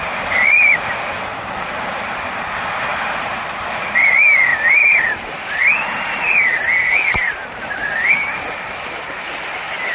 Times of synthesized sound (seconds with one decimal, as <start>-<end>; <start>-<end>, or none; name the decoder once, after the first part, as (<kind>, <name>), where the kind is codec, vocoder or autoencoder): 4.5-9.2 (vocoder, BigVGAN v2)